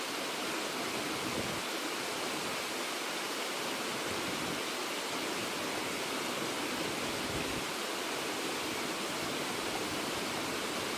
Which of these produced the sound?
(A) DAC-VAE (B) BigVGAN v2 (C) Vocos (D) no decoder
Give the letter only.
D